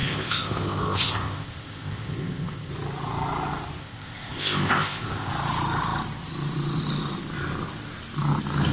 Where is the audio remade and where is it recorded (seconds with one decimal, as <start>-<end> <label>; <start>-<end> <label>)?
0.0-2.7 remade; 2.7-3.8 recorded; 3.8-5.3 remade; 5.3-8.7 recorded